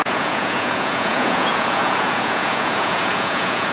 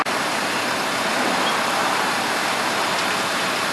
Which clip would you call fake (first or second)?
first